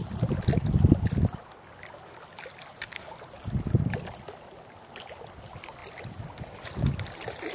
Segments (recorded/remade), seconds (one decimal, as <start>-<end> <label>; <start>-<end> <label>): 0.0-7.5 recorded